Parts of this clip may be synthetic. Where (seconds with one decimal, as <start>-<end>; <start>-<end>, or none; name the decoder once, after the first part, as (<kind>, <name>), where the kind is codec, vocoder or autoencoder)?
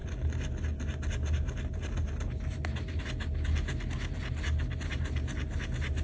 none